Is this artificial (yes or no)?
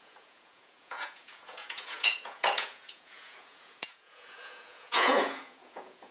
yes